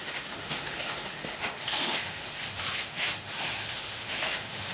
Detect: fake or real fake